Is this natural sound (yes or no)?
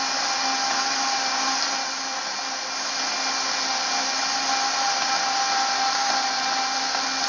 yes